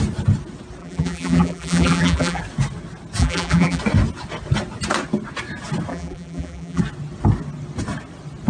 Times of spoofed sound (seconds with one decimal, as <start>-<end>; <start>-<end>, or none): 0.8-2.4; 3.2-3.8; 5.9-6.8